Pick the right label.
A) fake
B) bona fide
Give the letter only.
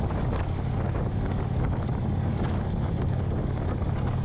A